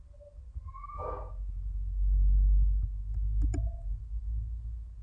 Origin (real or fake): real